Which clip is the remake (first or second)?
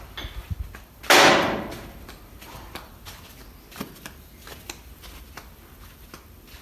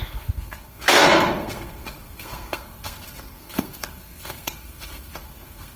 second